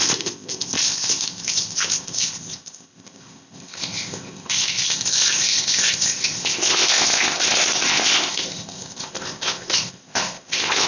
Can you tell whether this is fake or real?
fake